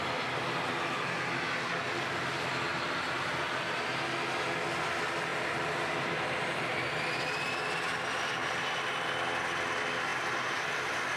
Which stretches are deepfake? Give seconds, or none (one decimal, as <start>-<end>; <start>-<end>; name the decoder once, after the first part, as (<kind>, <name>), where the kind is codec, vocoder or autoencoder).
none